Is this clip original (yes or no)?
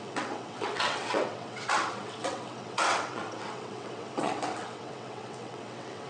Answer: no